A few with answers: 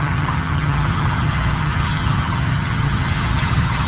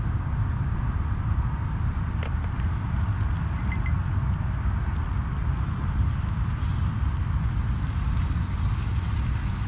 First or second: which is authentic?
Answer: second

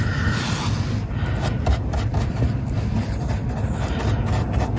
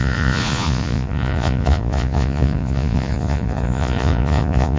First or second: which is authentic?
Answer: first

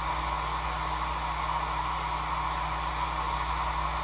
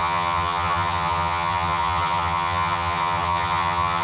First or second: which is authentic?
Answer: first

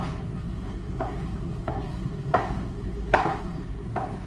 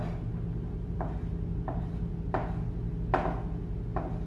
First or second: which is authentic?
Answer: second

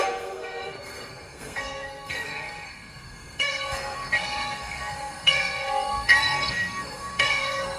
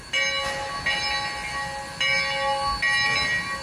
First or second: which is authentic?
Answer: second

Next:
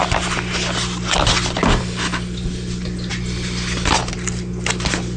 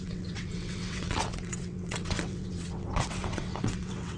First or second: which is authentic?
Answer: first